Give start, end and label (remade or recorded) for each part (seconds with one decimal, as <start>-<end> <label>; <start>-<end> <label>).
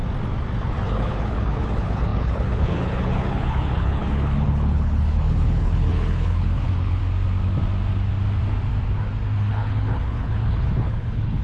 0.0-0.6 recorded; 0.6-7.0 remade; 7.0-9.4 recorded; 9.4-11.4 remade